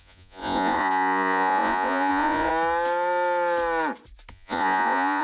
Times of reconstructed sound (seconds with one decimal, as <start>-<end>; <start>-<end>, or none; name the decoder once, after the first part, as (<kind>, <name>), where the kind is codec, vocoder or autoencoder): 0.0-2.5 (vocoder, Vocos); 4.3-5.2